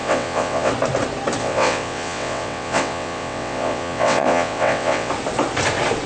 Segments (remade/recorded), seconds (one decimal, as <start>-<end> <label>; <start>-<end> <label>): 0.0-0.7 remade; 0.7-1.4 recorded; 1.4-5.1 remade; 5.1-6.1 recorded